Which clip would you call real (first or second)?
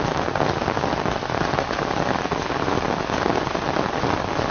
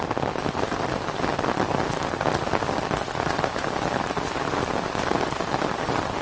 first